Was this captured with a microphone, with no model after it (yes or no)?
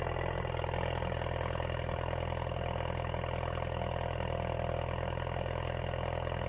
yes